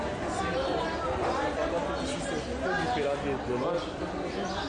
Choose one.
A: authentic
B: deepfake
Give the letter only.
A